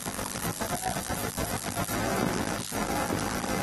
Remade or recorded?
remade